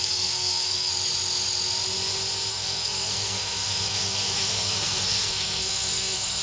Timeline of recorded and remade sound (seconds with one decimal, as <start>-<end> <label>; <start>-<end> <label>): 0.0-0.9 remade; 0.9-2.5 recorded; 2.5-6.4 remade